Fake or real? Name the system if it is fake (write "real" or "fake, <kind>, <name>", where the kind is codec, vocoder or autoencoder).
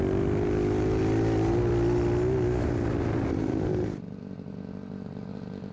real